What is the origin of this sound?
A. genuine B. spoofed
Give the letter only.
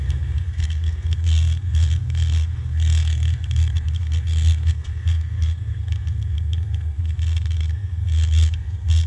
B